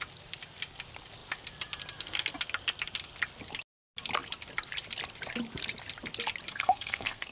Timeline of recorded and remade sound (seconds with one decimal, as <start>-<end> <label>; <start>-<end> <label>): 0.0-6.5 recorded; 6.5-7.3 remade

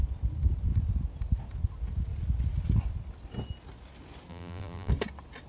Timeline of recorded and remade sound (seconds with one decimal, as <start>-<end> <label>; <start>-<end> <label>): 0.0-4.3 recorded; 4.3-4.9 remade; 4.9-5.5 recorded

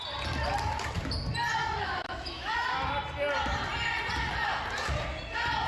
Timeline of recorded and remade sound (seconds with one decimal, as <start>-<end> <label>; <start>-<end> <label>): 0.0-1.6 recorded; 1.6-2.7 remade; 2.7-5.7 recorded